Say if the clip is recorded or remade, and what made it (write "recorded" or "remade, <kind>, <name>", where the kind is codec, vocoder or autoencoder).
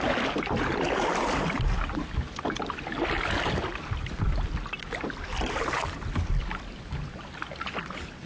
recorded